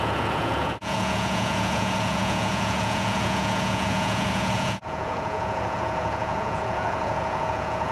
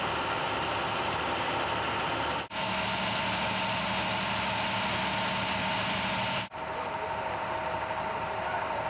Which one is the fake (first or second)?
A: first